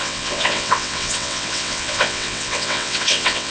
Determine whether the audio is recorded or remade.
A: remade